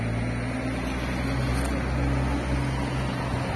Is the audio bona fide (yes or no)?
yes